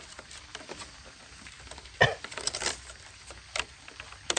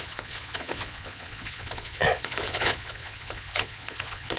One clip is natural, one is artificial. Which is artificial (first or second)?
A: second